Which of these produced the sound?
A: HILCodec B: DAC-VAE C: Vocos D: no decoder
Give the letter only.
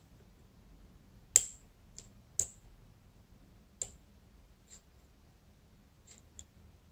D